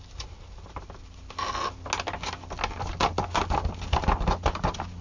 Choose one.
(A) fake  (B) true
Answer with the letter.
B